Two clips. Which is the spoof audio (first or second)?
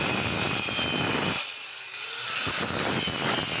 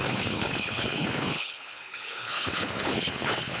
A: second